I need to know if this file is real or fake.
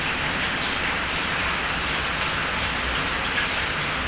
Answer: real